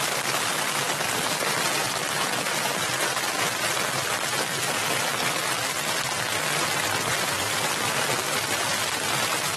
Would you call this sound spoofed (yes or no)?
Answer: yes